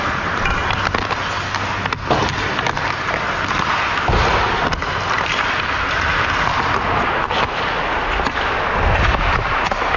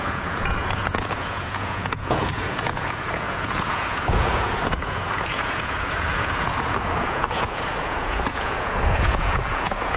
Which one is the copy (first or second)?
second